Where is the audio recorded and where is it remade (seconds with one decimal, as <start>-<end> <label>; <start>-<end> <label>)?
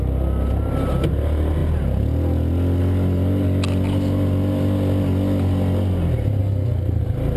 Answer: 0.0-6.4 recorded; 6.4-7.0 remade; 7.0-7.4 recorded